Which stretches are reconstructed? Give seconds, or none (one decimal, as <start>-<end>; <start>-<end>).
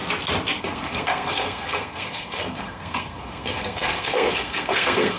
0.6-5.2